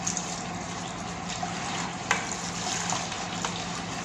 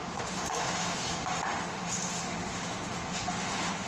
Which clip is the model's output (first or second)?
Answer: second